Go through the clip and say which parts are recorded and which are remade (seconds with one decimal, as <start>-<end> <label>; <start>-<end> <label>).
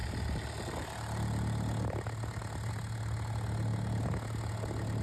0.0-5.0 recorded